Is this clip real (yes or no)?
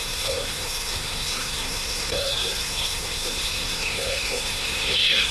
no